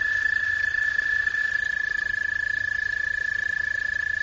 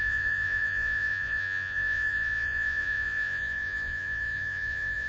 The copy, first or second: second